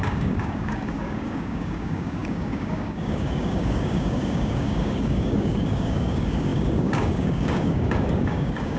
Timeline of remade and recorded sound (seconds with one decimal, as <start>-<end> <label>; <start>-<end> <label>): 0.0-8.8 remade

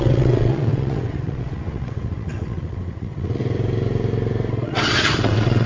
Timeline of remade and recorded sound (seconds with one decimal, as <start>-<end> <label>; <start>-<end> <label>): 0.0-3.4 remade; 3.4-4.5 recorded; 4.5-5.7 remade

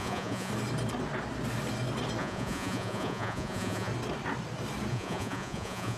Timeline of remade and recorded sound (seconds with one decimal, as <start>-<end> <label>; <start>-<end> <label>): 0.0-0.5 remade; 0.5-2.2 recorded; 2.2-3.9 remade; 3.9-4.9 recorded; 4.9-6.0 remade

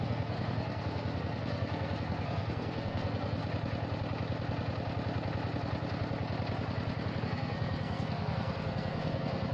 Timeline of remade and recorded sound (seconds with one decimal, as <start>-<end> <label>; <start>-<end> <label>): 0.0-3.4 remade; 3.4-7.2 recorded; 7.2-9.5 remade

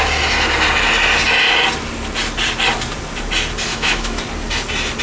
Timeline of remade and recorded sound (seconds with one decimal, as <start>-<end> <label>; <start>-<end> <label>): 0.0-3.7 recorded; 3.7-4.2 remade; 4.2-5.0 recorded

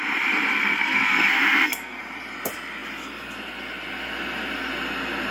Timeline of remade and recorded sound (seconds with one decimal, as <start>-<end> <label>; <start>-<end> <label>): 0.0-0.5 recorded; 0.5-2.0 remade; 2.0-5.3 recorded

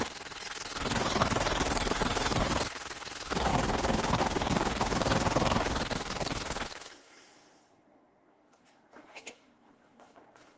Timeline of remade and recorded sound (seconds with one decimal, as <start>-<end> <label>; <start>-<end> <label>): 0.0-10.6 remade